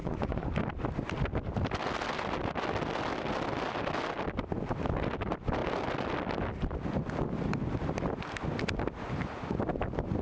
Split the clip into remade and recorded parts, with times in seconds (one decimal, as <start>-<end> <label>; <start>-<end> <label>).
0.0-0.5 remade; 0.5-10.2 recorded